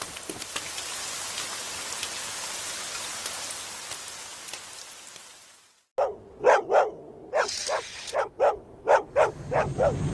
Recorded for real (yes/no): yes